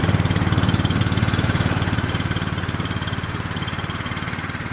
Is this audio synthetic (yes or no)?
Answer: yes